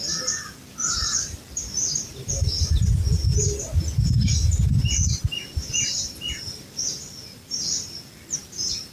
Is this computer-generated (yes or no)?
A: no